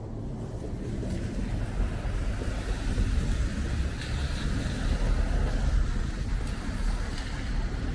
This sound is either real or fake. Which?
real